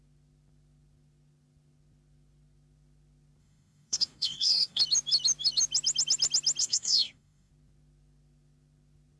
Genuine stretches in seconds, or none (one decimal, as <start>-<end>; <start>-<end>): 0.0-3.4; 4.8-6.6; 7.5-9.2